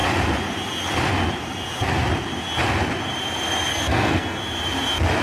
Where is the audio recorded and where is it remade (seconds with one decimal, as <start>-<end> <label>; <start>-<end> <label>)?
0.0-3.7 recorded; 3.7-4.4 remade; 4.4-5.2 recorded